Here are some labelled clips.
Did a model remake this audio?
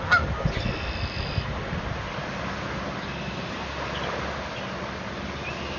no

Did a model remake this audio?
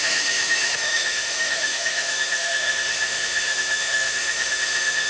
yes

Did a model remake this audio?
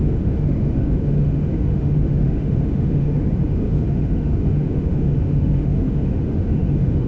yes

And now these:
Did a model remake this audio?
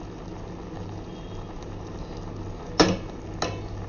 no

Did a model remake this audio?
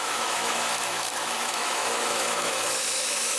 yes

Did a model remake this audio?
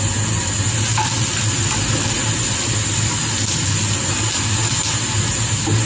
no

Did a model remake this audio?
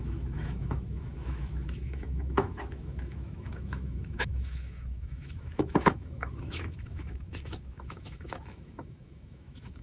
yes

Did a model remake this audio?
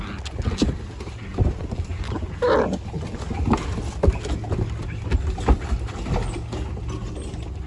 no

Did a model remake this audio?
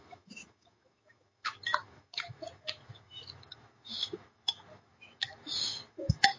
yes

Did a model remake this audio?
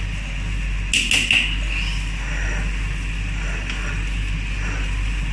no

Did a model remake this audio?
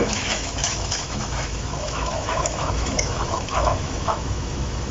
yes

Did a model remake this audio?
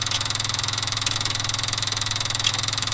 yes